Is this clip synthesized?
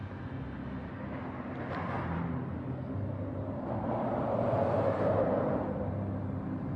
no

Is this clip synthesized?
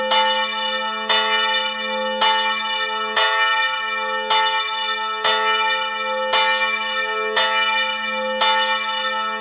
no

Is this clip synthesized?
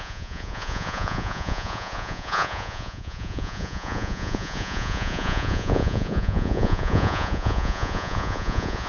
yes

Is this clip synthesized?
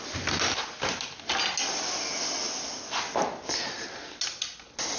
no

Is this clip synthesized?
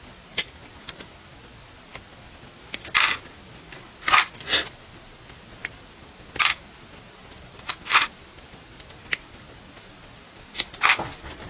no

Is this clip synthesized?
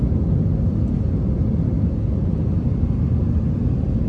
no